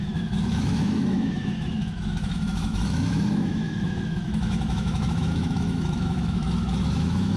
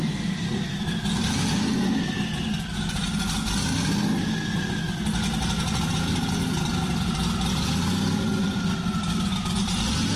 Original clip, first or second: second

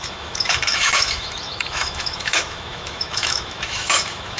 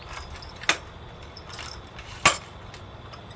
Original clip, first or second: second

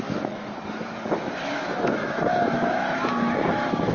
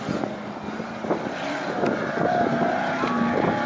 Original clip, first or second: second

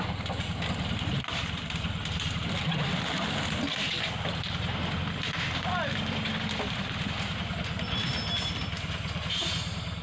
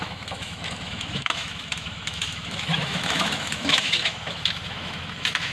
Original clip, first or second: first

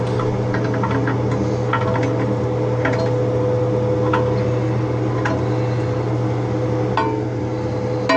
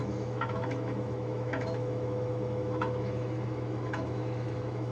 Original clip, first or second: first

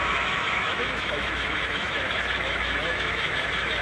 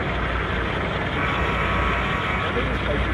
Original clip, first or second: second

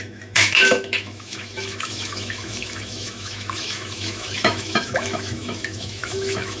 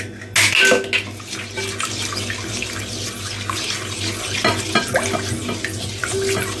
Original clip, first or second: second